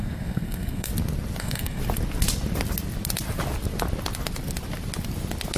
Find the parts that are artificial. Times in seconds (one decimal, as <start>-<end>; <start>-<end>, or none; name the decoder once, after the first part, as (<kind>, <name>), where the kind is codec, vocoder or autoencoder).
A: 0.0-0.9 (codec, SNAC); 1.4-1.8